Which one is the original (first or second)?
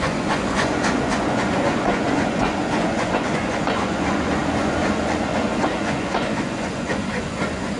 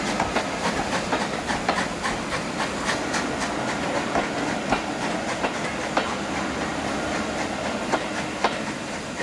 second